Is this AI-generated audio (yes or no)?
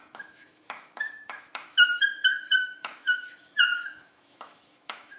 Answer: yes